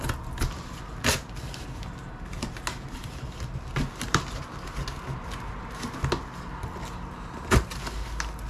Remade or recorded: recorded